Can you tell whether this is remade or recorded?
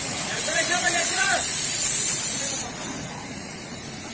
remade